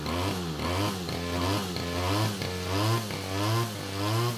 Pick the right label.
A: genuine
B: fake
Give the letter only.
A